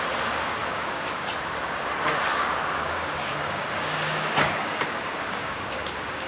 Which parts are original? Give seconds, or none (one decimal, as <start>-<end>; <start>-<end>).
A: 0.0-0.6; 1.3-2.3